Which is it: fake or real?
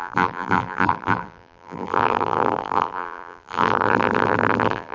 fake